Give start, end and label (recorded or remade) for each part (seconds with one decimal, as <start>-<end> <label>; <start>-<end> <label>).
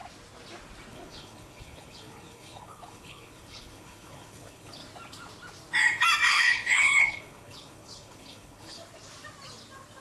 0.0-0.9 recorded; 0.9-4.8 remade; 4.8-6.3 recorded; 6.3-8.8 remade; 8.8-10.0 recorded